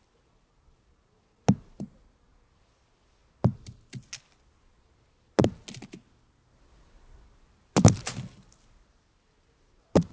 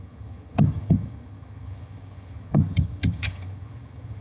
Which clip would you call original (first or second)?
first